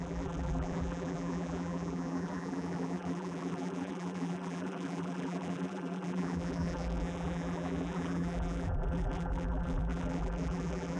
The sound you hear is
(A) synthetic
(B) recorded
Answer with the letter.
A